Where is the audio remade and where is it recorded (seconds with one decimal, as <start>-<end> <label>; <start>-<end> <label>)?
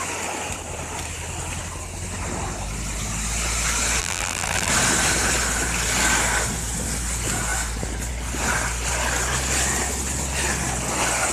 0.0-4.0 recorded; 4.0-4.7 remade; 4.7-11.3 recorded